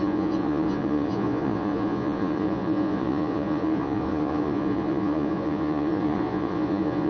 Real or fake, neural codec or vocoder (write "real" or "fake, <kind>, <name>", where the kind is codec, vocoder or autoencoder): fake, vocoder, Vocos